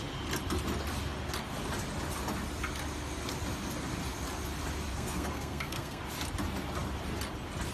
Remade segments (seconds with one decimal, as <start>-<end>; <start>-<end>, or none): 4.9-6.0